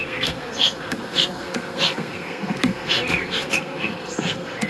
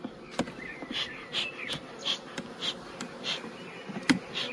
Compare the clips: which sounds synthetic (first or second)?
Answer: first